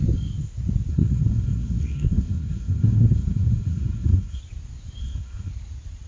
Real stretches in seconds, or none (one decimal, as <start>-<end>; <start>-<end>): 0.0-0.9; 4.4-5.0; 5.5-6.1